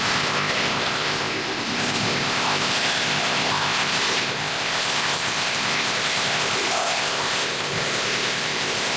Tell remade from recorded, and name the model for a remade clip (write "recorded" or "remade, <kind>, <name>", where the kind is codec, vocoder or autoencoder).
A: remade, codec, ZipCodec